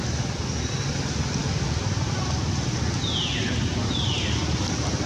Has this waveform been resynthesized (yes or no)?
no